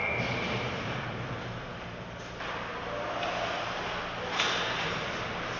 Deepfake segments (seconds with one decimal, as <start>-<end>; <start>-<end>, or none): 0.0-1.1